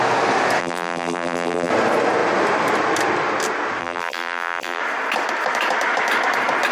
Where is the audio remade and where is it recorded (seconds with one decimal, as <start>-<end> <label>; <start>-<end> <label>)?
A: 0.0-0.6 recorded; 0.6-1.7 remade; 1.7-3.8 recorded; 3.8-4.8 remade; 4.8-6.7 recorded